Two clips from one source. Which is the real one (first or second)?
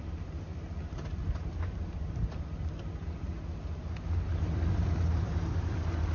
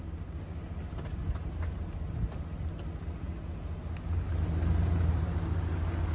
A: second